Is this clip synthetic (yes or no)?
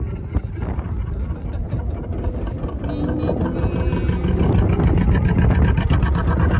no